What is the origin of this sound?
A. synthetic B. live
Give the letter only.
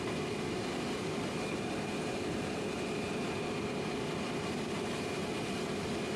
B